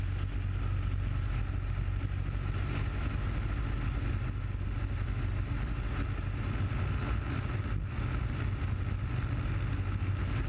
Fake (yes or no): no